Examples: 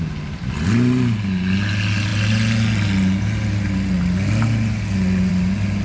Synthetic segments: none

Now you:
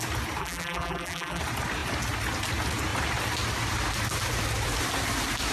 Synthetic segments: 0.4-1.4 (vocoder, BigVGAN v2)

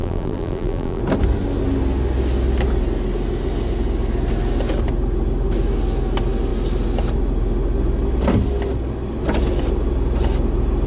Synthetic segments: 0.0-1.0 (vocoder, BigVGAN v2)

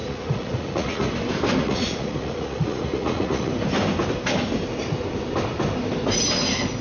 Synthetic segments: 0.0-1.1 (vocoder, Vocos); 1.6-3.5

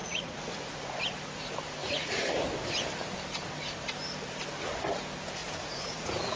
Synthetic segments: 0.0-1.0 (vocoder, Vocos); 1.8-2.3; 5.4-6.4

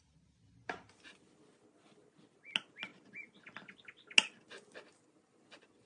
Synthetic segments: 2.9-3.8 (vocoder, BigVGAN v2)